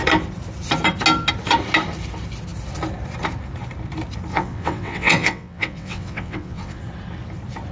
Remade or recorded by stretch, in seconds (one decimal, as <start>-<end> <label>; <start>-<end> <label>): 0.0-4.3 recorded; 4.3-6.8 remade; 6.8-7.7 recorded